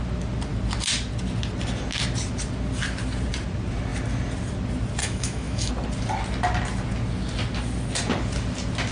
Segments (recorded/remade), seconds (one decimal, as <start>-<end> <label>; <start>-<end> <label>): 0.0-5.0 recorded; 5.0-5.7 remade; 5.7-8.9 recorded